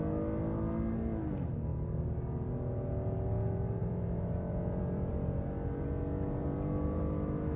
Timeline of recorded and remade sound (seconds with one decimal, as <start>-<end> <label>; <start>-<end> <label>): 0.0-3.8 recorded; 3.8-5.1 remade; 5.1-6.4 recorded; 6.4-7.6 remade